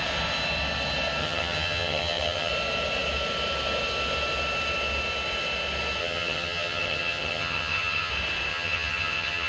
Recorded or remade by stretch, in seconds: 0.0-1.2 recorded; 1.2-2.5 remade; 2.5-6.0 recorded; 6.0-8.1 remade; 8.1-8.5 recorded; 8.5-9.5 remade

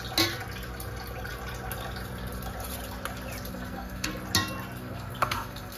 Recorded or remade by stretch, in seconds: 0.0-3.5 recorded; 3.5-4.1 remade; 4.1-4.8 recorded; 4.8-5.8 remade

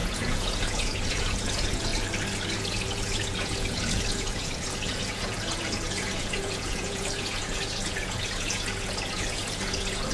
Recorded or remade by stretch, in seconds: 0.0-1.9 remade; 1.9-2.6 recorded; 2.6-10.1 remade

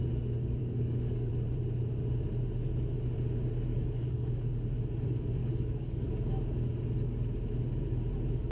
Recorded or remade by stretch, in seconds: 0.0-0.6 recorded; 0.6-1.3 remade; 1.3-3.7 recorded; 3.7-4.5 remade; 4.5-5.4 recorded; 5.4-6.1 remade; 6.1-8.5 recorded